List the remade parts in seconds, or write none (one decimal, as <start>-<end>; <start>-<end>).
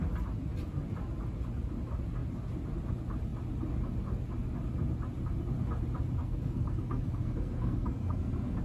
6.2-8.6